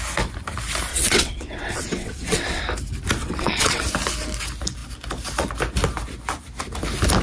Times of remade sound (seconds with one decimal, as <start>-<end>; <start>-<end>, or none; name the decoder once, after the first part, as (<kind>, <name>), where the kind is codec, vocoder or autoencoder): 0.9-2.6 (vocoder, WaveNeXt); 3.2-3.8

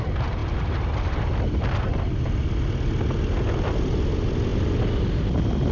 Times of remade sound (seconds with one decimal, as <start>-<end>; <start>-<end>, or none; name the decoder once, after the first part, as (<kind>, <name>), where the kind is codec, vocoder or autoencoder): none

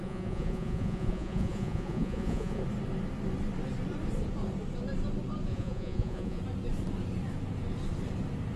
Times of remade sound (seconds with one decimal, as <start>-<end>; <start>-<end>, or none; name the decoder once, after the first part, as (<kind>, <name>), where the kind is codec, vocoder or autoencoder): 0.0-2.6 (vocoder, Vocos); 5.5-6.4

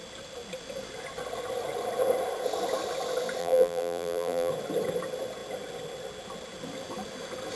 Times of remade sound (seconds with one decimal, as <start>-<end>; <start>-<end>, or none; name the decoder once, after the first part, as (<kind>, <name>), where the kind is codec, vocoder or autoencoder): 3.4-4.5 (vocoder, BigVGAN v2)

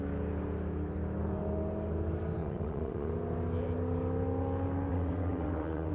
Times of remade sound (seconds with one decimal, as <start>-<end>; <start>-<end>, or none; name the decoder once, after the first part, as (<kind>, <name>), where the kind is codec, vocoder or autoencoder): 2.4-3.1 (vocoder, WaveNeXt); 4.9-5.9